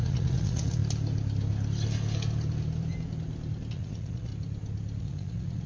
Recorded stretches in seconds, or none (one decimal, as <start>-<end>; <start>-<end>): 0.8-3.7; 4.3-5.0

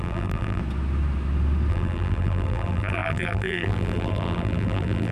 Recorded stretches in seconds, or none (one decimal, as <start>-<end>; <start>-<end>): 0.6-1.7

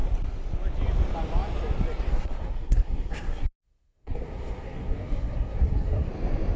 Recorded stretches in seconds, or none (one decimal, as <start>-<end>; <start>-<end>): 0.0-2.1; 6.1-6.6

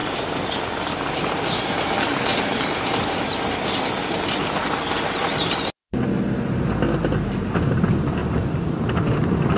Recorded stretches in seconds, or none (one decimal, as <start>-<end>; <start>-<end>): 0.0-9.6